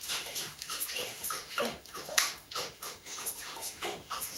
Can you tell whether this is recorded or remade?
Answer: remade